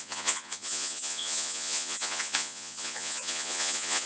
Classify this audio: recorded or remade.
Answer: remade